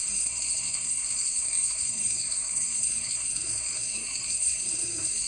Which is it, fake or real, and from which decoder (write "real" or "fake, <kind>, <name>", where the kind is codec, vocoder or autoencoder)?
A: fake, codec, SNAC